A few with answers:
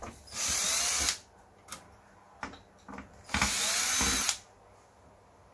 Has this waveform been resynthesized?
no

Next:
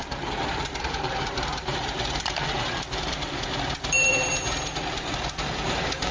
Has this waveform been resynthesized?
yes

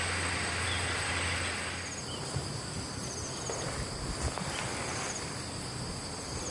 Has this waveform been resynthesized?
no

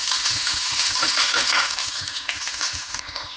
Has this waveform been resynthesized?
yes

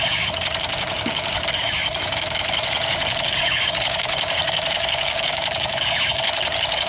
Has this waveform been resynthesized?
yes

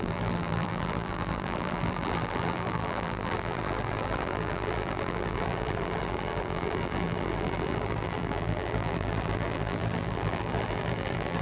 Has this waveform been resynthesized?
yes